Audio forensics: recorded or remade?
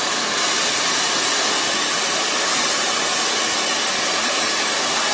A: recorded